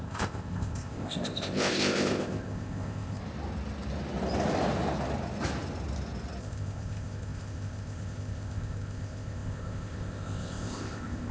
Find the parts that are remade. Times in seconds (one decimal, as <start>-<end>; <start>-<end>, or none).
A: 0.0-3.2; 6.4-11.3